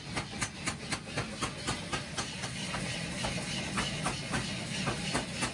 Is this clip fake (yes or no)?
no